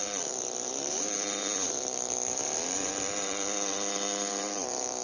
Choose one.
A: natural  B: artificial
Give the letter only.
B